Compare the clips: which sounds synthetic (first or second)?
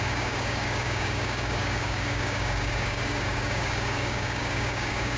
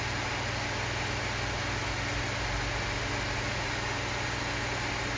first